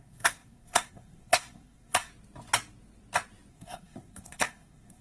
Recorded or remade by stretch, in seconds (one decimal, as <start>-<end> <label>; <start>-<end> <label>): 0.0-2.1 remade; 2.1-3.5 recorded; 3.5-5.0 remade